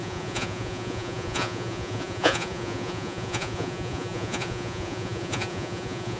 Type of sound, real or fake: fake